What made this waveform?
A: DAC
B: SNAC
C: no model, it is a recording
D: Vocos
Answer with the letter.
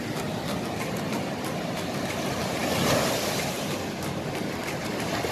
C